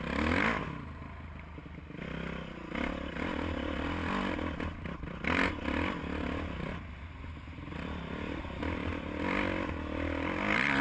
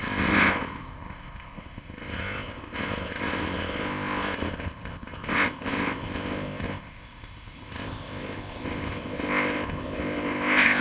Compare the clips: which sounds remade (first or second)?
second